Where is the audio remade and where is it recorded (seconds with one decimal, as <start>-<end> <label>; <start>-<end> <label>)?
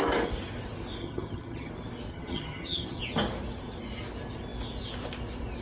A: 0.0-1.0 recorded; 1.0-1.7 remade; 1.7-2.1 recorded; 2.1-3.0 remade; 3.0-5.6 recorded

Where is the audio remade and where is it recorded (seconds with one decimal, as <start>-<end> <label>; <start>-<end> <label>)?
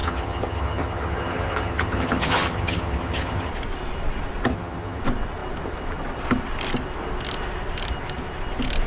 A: 0.0-3.5 remade; 3.5-4.5 recorded; 4.5-5.0 remade; 5.0-8.9 recorded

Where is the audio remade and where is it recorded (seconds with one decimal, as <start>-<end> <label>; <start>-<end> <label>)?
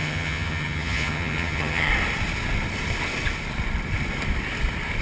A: 0.0-1.9 remade; 1.9-5.0 recorded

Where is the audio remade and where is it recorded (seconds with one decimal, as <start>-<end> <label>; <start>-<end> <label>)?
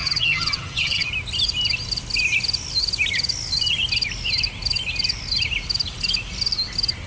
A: 0.0-1.1 remade; 1.1-7.1 recorded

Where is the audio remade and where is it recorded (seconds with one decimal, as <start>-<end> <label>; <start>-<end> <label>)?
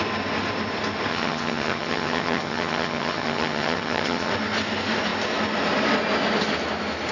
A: 0.0-1.1 recorded; 1.1-4.3 remade; 4.3-7.1 recorded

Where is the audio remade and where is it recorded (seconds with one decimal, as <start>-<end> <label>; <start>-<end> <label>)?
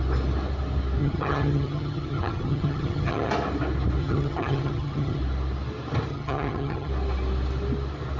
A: 0.0-1.0 recorded; 1.0-3.3 remade; 3.3-4.0 recorded; 4.0-5.2 remade; 5.2-6.1 recorded; 6.1-6.9 remade; 6.9-8.2 recorded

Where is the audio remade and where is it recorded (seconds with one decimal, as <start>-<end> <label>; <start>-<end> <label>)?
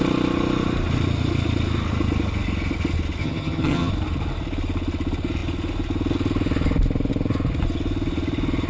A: 0.0-3.2 recorded; 3.2-3.9 remade; 3.9-8.7 recorded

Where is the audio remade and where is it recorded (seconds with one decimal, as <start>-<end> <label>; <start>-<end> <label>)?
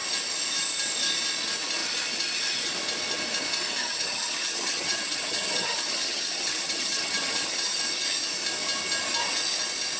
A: 0.0-3.8 recorded; 3.8-7.8 remade; 7.8-10.0 recorded